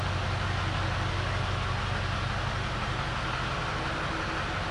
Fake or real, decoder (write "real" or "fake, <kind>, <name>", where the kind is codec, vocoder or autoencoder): real